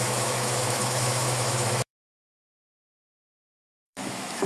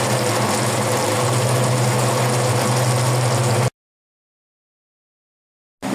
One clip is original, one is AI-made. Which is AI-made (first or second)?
first